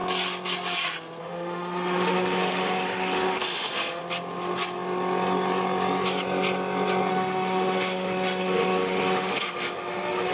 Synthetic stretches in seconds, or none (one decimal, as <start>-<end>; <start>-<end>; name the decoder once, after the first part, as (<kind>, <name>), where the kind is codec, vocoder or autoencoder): 1.2-4.0 (autoencoder, DAC-VAE); 7.1-10.3